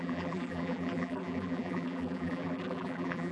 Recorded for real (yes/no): no